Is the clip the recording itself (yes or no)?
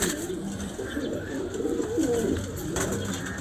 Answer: yes